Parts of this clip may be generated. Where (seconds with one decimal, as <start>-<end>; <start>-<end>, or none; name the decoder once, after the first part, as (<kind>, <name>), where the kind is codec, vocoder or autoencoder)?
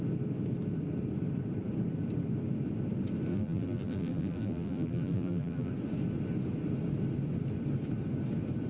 3.3-5.7 (vocoder, BigVGAN v2)